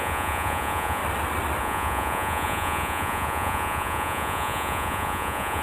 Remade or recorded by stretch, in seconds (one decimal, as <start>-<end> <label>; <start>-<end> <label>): 0.0-1.0 remade; 1.0-1.6 recorded; 1.6-5.6 remade